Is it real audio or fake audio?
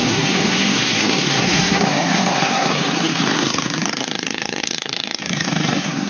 fake